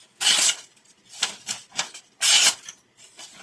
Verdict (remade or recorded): recorded